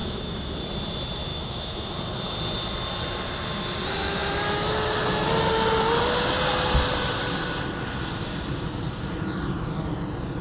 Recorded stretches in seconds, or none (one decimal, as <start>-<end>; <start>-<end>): 0.5-1.3; 1.9-10.4